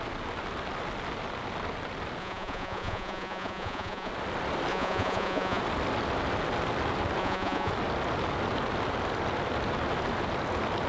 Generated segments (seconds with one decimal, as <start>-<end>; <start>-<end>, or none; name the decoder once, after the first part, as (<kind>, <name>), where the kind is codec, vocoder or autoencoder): 2.2-4.1 (vocoder, Vocos); 4.7-5.6; 7.2-7.7